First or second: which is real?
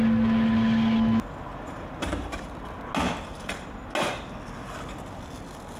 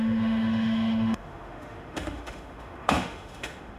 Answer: first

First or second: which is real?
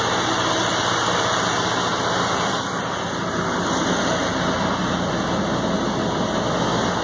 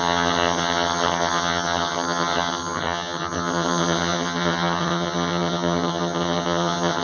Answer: first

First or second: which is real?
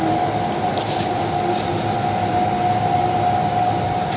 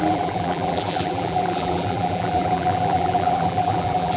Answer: first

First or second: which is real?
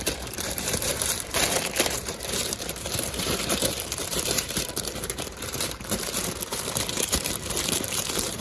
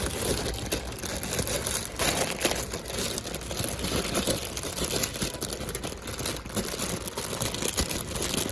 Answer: second